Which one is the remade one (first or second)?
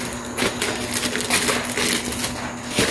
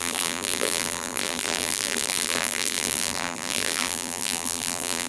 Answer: second